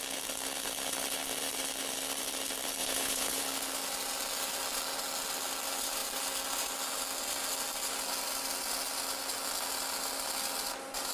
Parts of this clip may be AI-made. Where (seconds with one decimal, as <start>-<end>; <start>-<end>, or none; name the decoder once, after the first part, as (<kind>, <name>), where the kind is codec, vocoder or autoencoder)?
2.8-3.4 (vocoder, Vocos)